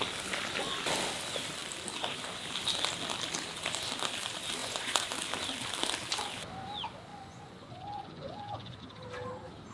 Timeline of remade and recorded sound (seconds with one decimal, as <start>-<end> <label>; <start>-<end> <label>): 0.0-4.6 recorded; 4.6-5.1 remade; 5.1-7.1 recorded; 7.1-8.8 remade; 8.8-9.7 recorded

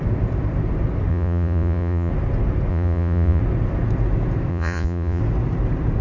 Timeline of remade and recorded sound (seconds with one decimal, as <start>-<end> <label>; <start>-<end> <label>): 0.0-1.1 recorded; 1.1-2.1 remade; 2.1-2.7 recorded; 2.7-3.4 remade; 3.4-4.5 recorded; 4.5-5.2 remade; 5.2-6.0 recorded

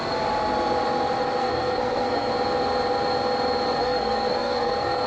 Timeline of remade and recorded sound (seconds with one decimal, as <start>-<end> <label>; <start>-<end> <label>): 0.0-1.4 recorded; 1.4-2.3 remade; 2.3-3.8 recorded; 3.8-5.1 remade

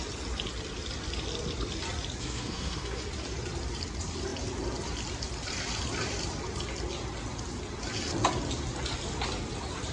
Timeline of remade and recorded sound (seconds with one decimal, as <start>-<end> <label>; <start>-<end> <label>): 0.0-2.2 recorded; 2.2-3.0 remade; 3.0-9.9 recorded